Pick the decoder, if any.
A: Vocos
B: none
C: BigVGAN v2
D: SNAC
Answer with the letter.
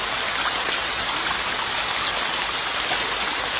B